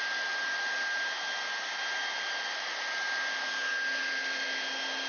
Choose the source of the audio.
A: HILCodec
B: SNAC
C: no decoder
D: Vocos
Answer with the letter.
C